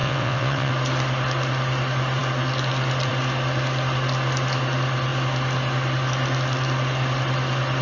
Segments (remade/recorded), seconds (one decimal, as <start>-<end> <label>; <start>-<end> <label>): 0.0-0.7 remade; 0.7-7.8 recorded